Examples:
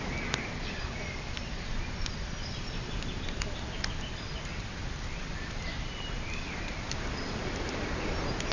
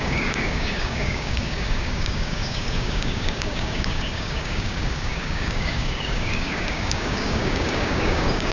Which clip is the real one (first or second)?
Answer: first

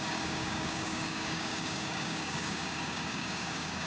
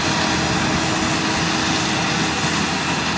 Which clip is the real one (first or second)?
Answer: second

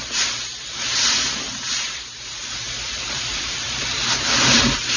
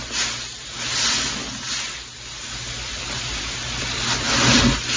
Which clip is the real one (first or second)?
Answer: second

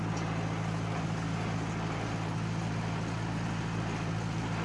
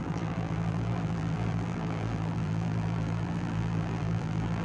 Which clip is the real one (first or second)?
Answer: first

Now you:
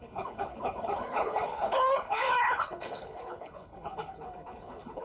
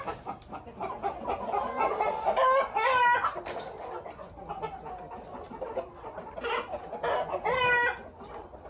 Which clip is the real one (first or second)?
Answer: second